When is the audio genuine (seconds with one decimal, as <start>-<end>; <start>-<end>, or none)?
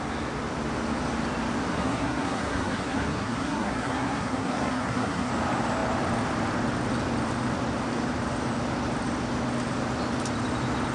0.0-1.7; 5.3-10.9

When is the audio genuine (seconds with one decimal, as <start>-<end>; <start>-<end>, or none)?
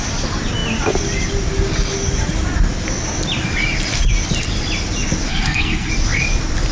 0.0-5.3; 5.9-6.7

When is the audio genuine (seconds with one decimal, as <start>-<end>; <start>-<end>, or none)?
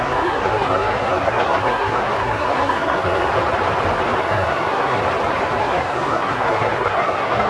3.3-4.2; 5.0-5.6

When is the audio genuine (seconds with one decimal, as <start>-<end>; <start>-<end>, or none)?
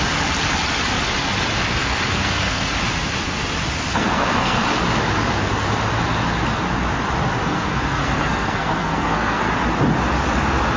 0.0-1.8; 2.7-3.9; 4.6-7.4; 9.5-10.8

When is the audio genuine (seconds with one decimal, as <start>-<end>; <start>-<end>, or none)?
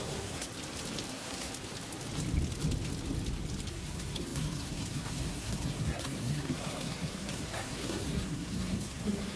0.5-1.1; 1.5-3.7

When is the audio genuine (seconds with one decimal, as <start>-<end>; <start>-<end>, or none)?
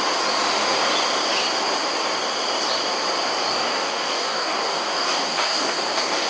0.0-3.5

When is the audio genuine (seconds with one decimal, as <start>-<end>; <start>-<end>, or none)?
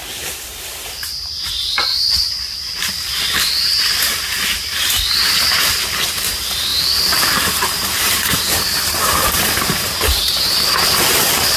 1.5-1.9; 3.4-6.7; 11.0-11.6